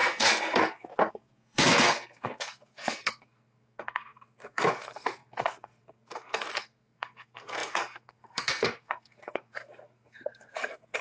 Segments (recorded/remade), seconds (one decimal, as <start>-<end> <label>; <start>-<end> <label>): 0.0-11.0 remade